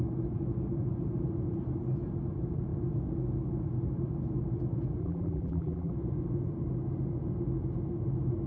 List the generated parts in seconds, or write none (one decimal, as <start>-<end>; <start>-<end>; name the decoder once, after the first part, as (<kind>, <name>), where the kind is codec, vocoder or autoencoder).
5.0-5.9 (vocoder, BigVGAN v2)